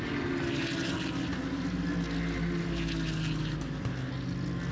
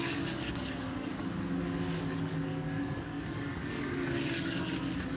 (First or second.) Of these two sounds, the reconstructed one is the second